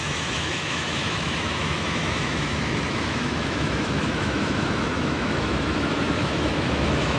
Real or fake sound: fake